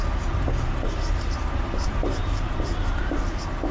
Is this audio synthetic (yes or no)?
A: yes